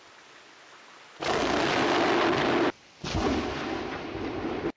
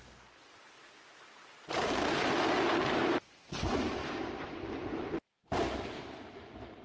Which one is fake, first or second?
second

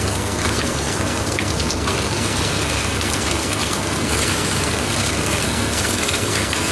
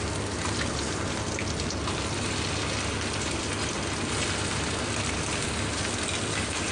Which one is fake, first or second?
first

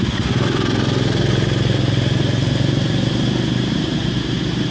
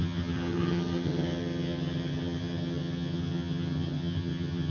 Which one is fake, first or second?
second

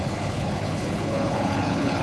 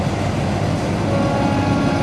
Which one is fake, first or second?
first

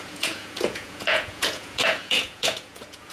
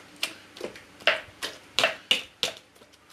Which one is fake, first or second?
first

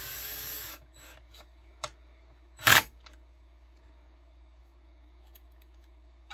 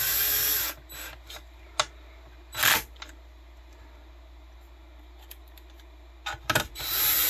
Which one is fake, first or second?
first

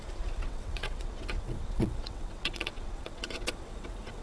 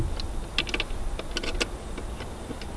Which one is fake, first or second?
first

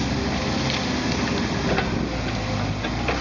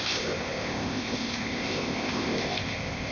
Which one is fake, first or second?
second